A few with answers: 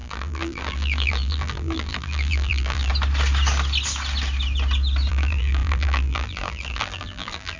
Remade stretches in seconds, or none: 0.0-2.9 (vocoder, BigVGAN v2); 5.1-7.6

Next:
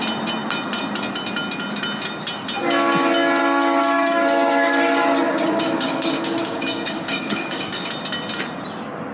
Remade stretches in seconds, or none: 3.4-7.9 (codec, DAC)